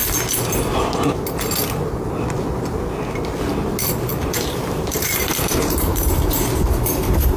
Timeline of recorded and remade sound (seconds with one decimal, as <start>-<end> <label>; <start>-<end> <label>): 0.0-4.1 recorded; 4.1-7.4 remade